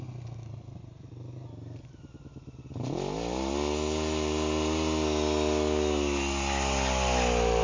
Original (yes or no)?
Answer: yes